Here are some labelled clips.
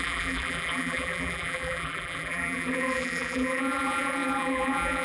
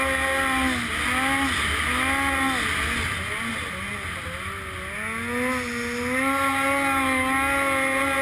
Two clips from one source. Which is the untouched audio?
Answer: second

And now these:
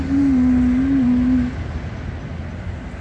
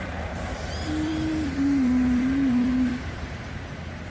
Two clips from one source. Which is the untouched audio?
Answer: first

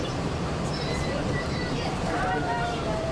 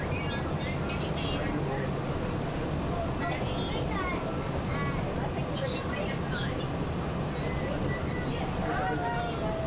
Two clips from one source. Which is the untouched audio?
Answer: second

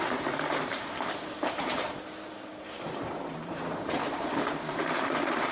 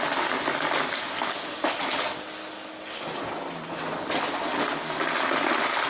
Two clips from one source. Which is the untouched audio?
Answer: second